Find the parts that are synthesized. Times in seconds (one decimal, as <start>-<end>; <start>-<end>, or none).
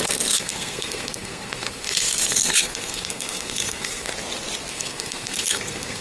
0.0-4.1; 4.7-6.0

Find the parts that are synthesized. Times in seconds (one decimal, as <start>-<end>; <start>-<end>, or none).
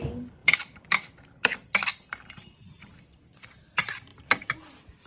4.1-5.1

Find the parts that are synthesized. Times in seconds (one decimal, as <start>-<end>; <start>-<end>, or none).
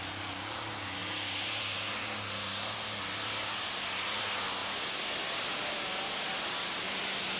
none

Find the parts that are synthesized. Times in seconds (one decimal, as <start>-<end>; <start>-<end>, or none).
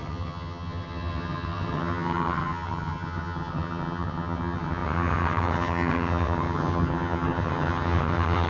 0.0-8.5